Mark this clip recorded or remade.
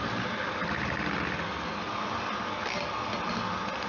recorded